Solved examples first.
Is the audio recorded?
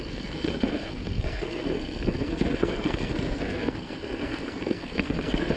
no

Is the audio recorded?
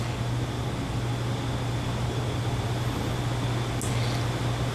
yes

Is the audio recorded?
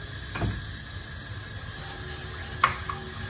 yes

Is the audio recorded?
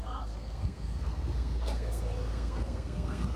no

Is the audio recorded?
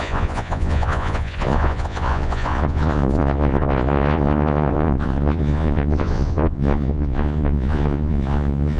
no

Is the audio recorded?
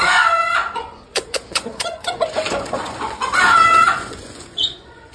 no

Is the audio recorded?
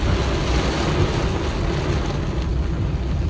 yes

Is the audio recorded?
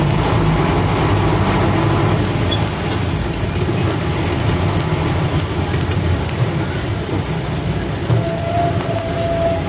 yes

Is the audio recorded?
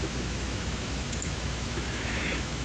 no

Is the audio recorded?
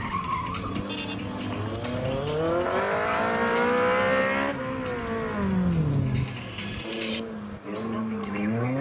yes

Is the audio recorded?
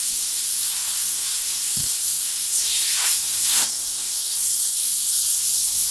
no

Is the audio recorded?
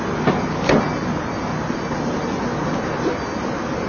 yes